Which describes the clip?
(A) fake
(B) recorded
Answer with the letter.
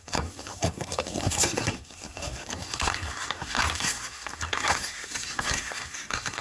A